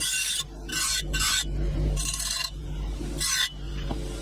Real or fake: fake